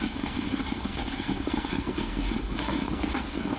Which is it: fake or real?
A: fake